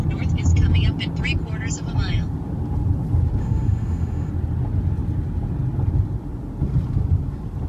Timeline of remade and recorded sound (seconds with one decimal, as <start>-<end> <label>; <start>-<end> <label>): 0.0-3.4 recorded; 3.4-4.3 remade; 4.3-7.7 recorded